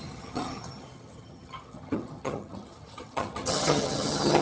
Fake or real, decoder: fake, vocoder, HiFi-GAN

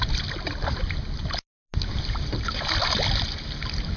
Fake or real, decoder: real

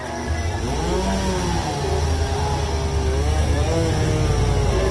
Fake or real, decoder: real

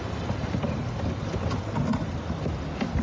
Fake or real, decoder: real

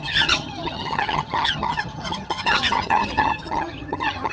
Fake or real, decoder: fake, vocoder, HiFi-GAN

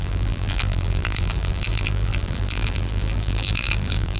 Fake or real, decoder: fake, vocoder, BigVGAN v2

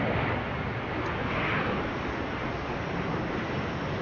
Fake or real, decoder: real